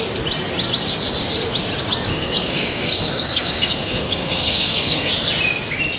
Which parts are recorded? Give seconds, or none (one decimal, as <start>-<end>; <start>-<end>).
0.0-2.1; 5.1-6.0